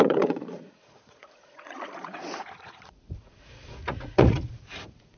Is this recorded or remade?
remade